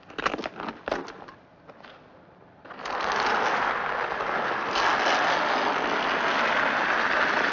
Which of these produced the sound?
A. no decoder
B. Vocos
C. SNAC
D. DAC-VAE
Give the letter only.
A